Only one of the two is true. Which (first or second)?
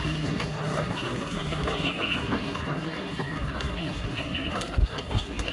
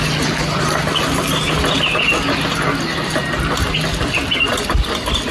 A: second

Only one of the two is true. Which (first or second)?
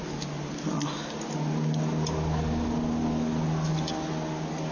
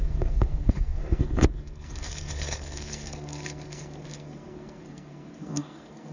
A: first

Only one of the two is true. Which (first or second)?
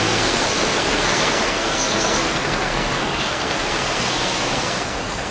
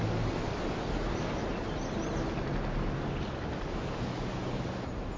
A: second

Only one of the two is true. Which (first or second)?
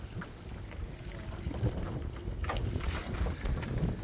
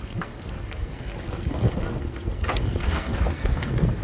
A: first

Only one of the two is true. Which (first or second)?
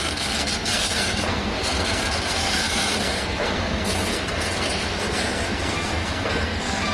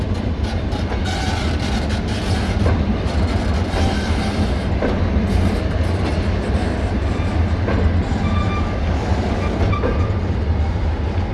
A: second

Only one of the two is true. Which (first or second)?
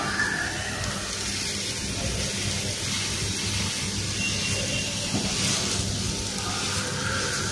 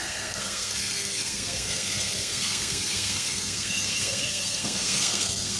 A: first